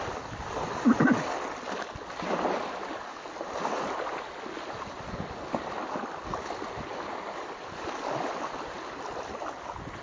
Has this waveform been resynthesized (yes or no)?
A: no